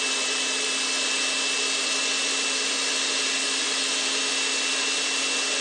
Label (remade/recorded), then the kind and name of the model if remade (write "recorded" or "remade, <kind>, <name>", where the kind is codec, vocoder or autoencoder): recorded